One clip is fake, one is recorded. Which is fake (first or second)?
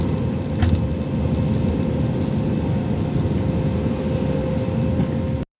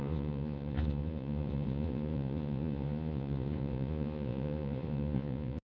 second